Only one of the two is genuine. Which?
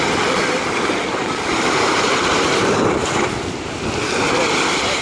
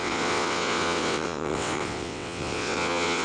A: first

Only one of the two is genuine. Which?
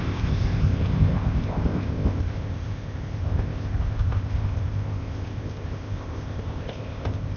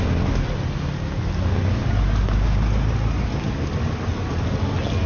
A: second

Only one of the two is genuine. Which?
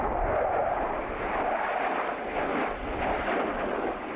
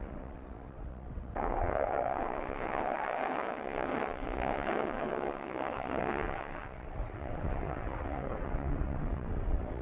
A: first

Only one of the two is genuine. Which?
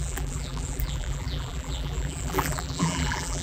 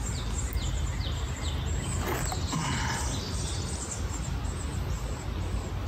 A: second